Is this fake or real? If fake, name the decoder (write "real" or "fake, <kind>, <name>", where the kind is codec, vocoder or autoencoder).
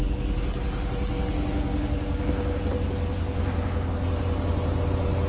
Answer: real